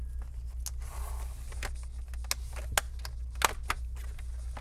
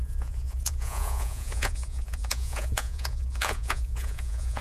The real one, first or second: first